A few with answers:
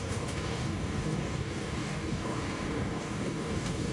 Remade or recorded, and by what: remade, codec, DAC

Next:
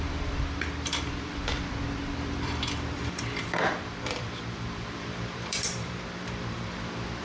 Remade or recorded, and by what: remade, vocoder, BigVGAN v2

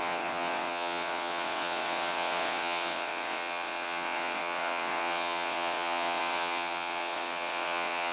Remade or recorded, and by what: remade, vocoder, WaveNeXt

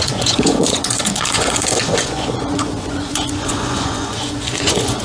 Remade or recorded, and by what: remade, vocoder, Vocos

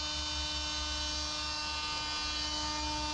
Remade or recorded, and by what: recorded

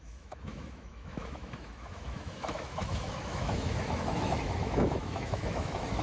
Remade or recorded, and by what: remade, autoencoder, DAC-VAE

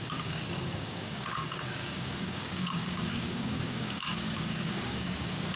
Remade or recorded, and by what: remade, codec, DAC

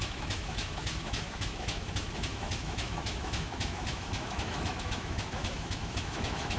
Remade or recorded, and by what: remade, autoencoder, DAC-VAE